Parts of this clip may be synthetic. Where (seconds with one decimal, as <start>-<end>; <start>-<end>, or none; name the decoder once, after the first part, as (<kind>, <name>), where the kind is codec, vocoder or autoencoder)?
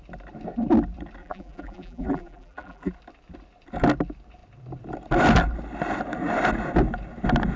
1.2-2.9 (vocoder, BigVGAN v2)